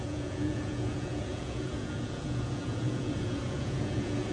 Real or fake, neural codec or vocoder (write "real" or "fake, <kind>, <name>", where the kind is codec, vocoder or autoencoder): fake, vocoder, Vocos